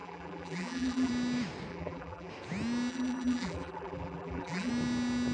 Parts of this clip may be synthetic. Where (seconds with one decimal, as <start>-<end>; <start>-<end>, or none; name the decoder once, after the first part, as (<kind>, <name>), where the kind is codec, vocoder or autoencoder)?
0.0-1.1 (vocoder, BigVGAN v2); 1.7-2.3; 2.9-4.7